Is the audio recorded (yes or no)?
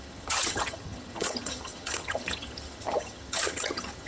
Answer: no